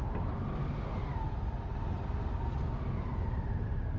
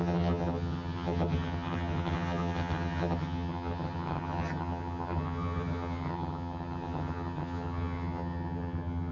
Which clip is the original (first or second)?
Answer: first